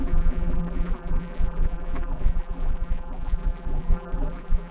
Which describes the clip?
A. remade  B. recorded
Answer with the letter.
A